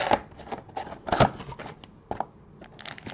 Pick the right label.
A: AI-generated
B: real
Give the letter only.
B